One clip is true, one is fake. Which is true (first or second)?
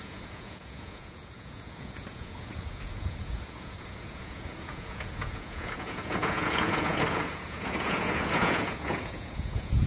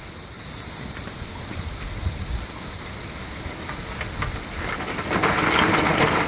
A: second